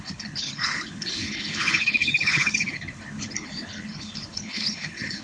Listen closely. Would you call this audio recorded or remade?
remade